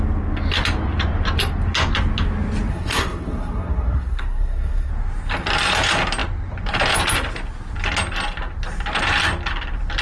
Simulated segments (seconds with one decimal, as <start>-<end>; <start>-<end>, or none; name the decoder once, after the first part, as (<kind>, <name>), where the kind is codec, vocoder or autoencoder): 2.7-4.9 (codec, SNAC)